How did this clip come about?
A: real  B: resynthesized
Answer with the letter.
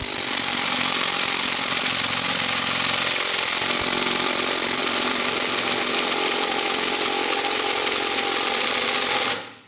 B